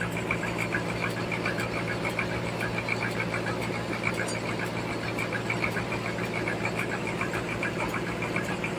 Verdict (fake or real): real